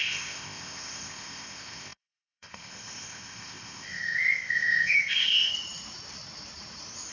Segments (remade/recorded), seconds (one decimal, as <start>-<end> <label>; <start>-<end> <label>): 0.0-5.5 remade; 5.5-7.1 recorded